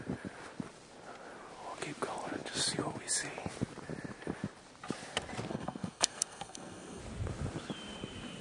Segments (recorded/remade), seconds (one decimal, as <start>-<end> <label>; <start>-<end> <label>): 0.0-5.5 recorded; 5.5-7.0 remade; 7.0-8.4 recorded